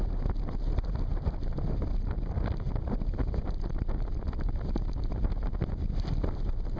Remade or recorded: remade